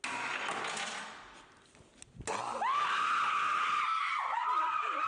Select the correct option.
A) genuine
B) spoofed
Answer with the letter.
A